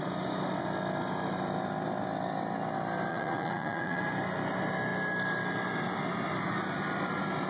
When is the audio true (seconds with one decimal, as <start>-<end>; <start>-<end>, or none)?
0.0-3.1; 4.0-7.5